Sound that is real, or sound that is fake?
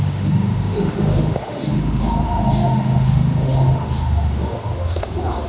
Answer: fake